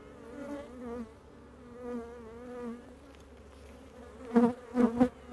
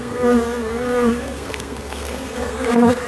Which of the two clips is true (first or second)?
first